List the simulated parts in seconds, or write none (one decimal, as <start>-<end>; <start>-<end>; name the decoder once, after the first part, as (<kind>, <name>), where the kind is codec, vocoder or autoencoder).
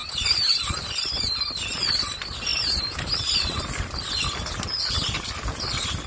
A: none